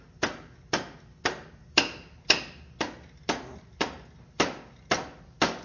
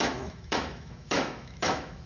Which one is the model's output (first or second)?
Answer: second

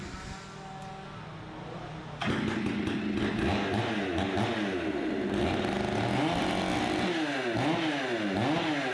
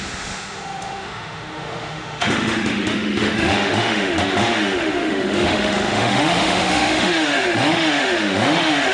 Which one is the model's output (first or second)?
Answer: second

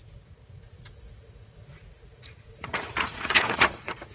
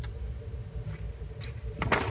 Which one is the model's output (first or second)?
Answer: first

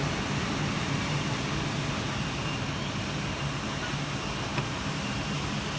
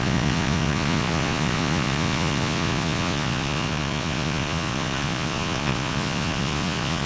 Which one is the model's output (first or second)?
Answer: second